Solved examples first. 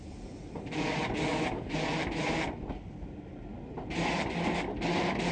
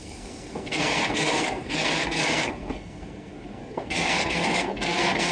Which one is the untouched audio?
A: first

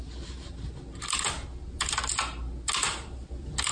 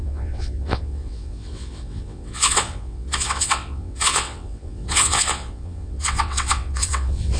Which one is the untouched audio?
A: first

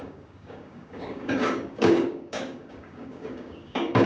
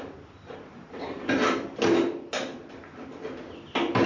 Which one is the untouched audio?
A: second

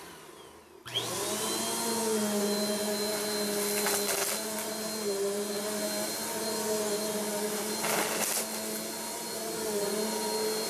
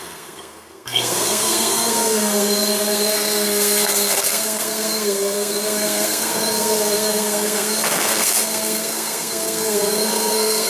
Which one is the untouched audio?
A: first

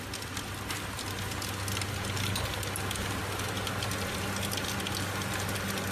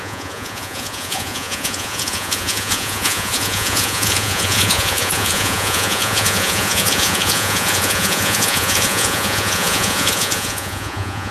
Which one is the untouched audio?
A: first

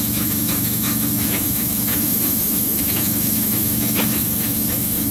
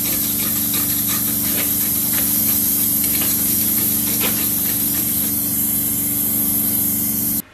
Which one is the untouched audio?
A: second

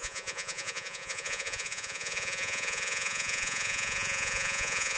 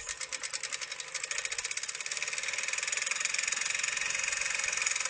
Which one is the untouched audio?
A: second